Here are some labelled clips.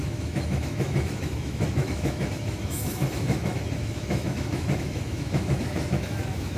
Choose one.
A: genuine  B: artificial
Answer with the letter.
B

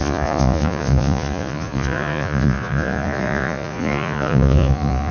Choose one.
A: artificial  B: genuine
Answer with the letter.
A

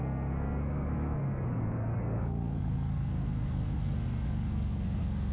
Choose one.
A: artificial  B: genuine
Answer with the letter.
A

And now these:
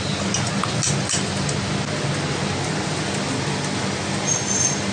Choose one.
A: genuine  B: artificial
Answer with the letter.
A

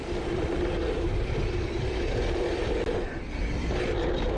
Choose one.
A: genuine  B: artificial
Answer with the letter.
A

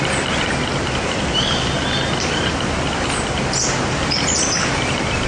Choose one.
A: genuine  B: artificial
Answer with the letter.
A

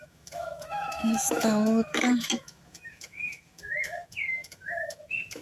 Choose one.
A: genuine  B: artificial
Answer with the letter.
B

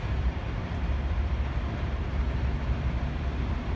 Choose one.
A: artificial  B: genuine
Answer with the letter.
A